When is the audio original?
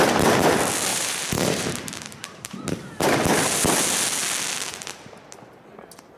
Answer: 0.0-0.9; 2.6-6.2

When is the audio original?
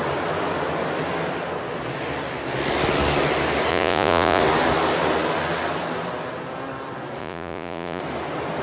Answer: 0.0-3.7; 4.4-7.2; 8.0-8.6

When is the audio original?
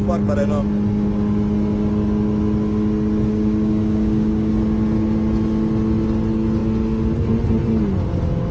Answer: 0.0-3.3; 4.5-8.5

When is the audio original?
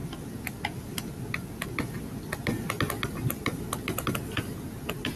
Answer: 0.0-5.2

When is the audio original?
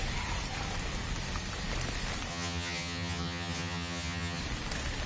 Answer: 0.0-2.3; 4.4-5.1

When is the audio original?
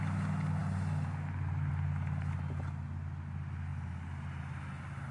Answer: 0.0-5.1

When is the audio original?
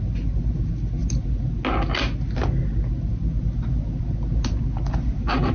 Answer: 0.0-5.5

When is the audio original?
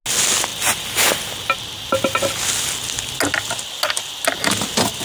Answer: 0.0-5.0